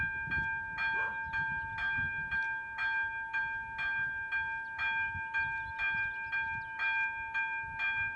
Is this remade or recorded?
recorded